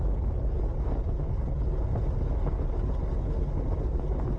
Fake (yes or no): no